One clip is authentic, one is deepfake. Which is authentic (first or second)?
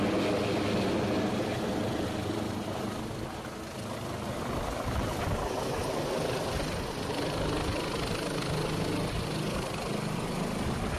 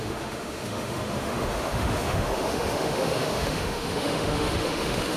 first